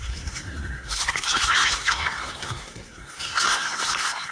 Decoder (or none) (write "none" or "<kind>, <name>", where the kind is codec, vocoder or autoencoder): codec, SNAC